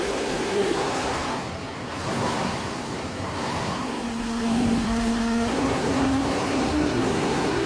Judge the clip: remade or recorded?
remade